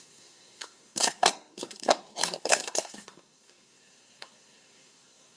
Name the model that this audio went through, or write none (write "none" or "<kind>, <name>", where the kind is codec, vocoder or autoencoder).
codec, SNAC